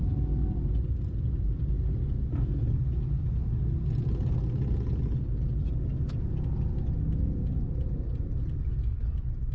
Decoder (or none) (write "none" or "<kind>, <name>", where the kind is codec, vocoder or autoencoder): none